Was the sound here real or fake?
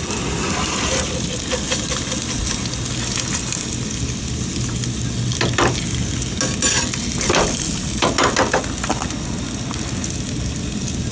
real